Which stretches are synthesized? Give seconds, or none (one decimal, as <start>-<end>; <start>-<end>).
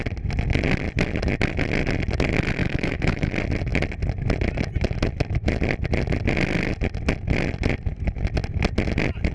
2.6-3.3